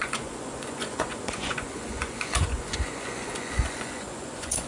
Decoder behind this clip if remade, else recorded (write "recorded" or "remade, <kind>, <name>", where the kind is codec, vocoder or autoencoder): remade, vocoder, Vocos